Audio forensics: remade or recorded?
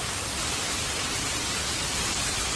recorded